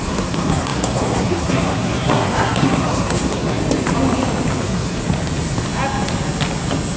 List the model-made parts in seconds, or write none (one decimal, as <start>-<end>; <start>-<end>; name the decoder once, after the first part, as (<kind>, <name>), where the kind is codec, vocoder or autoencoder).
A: 0.0-3.6 (codec, SNAC); 4.6-5.0